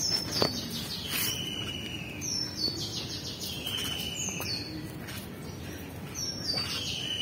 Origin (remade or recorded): recorded